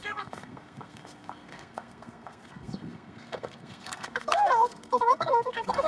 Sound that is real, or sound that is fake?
fake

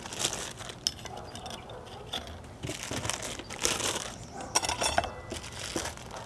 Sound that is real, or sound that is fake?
real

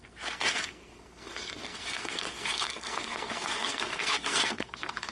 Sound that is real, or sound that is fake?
fake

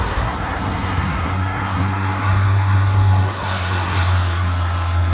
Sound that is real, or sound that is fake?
fake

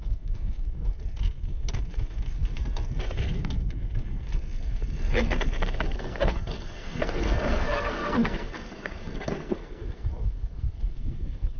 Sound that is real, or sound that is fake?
fake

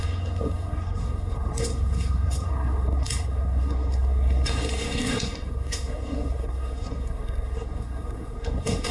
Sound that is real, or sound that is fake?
fake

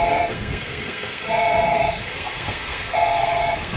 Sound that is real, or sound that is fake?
fake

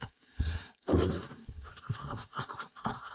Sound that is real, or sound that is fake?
fake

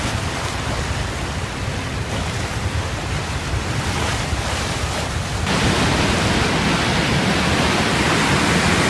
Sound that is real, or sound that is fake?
real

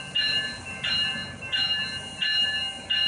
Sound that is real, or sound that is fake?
real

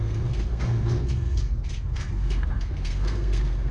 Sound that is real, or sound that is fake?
fake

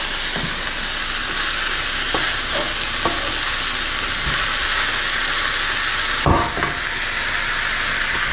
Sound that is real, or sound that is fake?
real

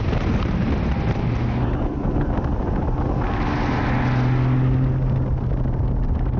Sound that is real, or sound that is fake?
real